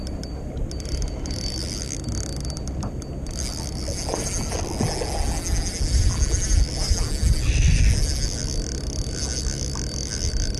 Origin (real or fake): real